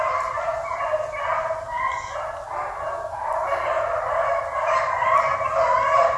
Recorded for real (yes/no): yes